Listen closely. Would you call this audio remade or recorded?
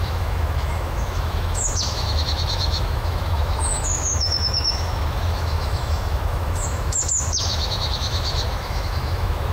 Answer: remade